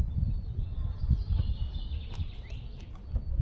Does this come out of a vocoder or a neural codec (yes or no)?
no